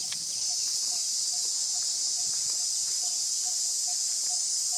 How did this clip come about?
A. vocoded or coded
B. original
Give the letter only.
A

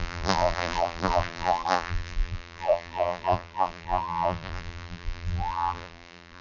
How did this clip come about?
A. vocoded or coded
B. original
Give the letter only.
A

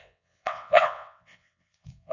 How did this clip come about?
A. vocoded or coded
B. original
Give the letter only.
A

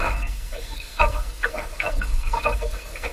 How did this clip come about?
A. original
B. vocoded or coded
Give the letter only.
B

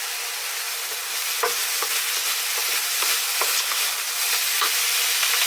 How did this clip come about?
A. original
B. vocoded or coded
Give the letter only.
A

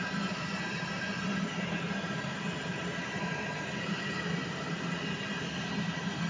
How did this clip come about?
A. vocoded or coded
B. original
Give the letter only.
B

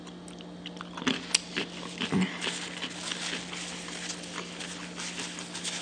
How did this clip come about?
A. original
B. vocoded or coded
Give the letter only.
A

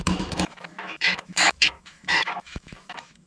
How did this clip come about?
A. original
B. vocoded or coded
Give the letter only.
B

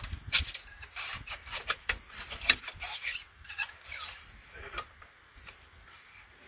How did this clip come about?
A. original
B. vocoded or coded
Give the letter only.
B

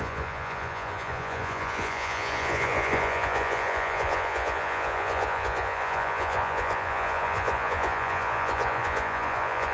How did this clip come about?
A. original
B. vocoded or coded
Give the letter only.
B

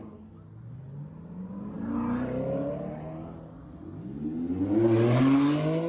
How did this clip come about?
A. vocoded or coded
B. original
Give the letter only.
B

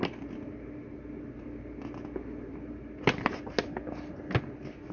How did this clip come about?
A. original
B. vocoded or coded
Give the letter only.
A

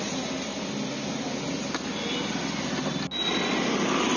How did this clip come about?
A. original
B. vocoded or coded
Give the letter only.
A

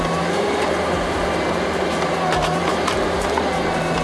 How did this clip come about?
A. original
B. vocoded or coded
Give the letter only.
B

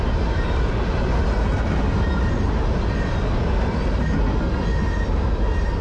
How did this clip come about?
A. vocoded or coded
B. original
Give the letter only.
B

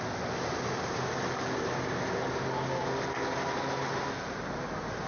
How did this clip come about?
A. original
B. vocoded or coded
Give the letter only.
A